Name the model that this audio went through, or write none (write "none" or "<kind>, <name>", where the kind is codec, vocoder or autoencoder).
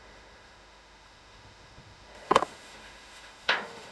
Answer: autoencoder, DAC-VAE